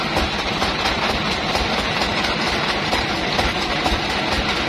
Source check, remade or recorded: recorded